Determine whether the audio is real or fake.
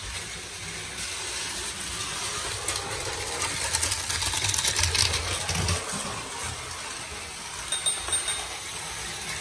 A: real